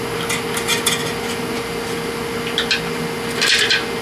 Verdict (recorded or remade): recorded